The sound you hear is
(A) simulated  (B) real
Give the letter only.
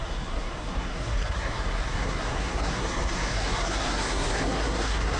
A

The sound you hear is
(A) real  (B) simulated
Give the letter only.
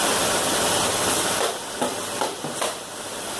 A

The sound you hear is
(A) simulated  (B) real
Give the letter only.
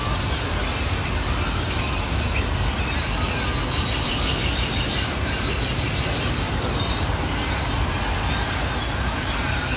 B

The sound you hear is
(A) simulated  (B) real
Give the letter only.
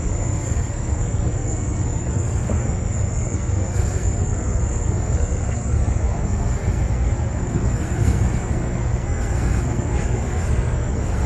A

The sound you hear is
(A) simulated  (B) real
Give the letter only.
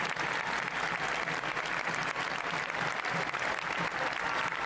B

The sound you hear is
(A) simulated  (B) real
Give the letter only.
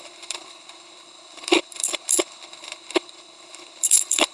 A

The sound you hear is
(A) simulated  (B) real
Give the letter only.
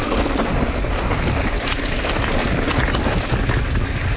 B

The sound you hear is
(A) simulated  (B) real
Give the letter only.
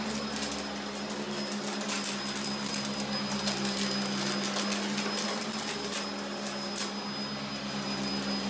B